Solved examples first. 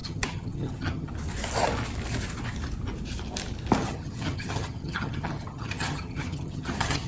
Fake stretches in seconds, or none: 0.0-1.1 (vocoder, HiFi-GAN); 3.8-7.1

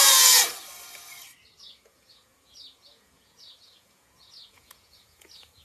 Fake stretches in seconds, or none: 0.0-0.4 (vocoder, Vocos); 1.6-5.6

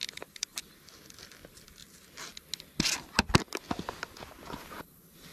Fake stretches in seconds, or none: 0.0-0.5 (vocoder, BigVGAN v2); 1.1-1.8; 3.9-5.3

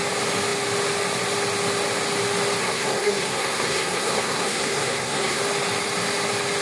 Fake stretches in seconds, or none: 2.6-5.4 (codec, SNAC)

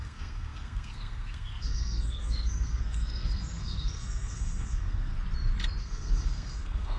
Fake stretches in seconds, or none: 0.0-5.1 (codec, SNAC); 5.8-7.0

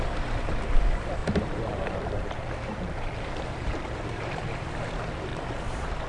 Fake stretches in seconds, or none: 1.2-4.7 (vocoder, BigVGAN v2); 5.3-6.1